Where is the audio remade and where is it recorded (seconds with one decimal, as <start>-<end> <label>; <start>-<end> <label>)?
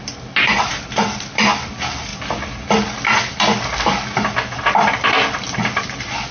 0.0-6.3 recorded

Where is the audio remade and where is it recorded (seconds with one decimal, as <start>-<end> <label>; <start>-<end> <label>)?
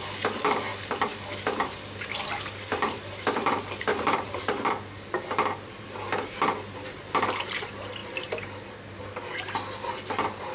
0.0-0.7 recorded; 0.7-1.3 remade; 1.3-3.9 recorded; 3.9-4.7 remade; 4.7-8.0 recorded; 8.0-9.0 remade; 9.0-10.5 recorded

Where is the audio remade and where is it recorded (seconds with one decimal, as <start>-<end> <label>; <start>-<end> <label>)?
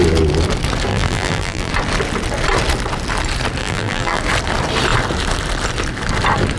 0.0-0.9 recorded; 0.9-1.7 remade; 1.7-3.6 recorded; 3.6-4.2 remade; 4.2-6.6 recorded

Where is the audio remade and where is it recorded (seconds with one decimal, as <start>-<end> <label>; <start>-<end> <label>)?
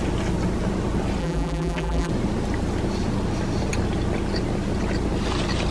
0.0-1.2 recorded; 1.2-2.1 remade; 2.1-5.7 recorded